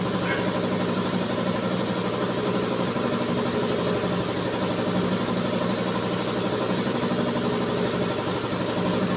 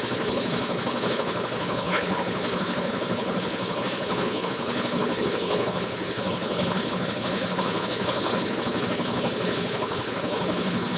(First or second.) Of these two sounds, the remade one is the second